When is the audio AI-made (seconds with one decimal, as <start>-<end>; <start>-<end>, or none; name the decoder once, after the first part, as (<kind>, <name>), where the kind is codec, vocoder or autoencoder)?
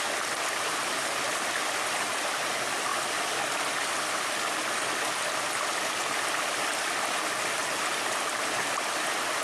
7.6-8.2 (vocoder, BigVGAN v2)